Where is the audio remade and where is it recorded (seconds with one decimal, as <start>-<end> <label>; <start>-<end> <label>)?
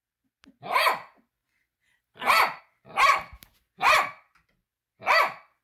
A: 0.0-1.4 recorded; 1.4-2.6 remade; 2.6-5.6 recorded